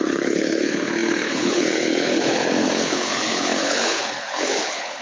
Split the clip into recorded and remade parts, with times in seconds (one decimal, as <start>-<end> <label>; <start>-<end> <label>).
0.0-5.0 remade